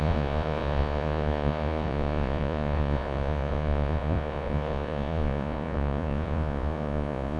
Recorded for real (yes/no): no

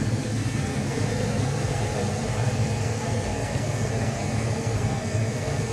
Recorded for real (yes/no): no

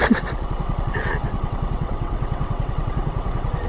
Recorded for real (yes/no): no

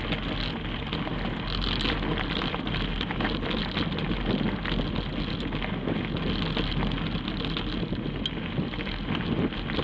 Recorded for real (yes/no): yes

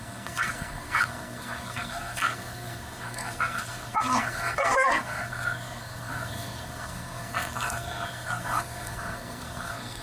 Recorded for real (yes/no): no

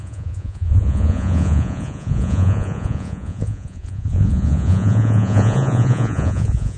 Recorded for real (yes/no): no